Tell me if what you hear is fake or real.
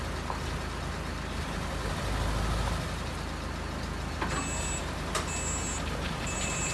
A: real